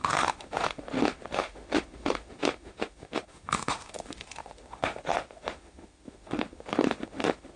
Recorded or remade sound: remade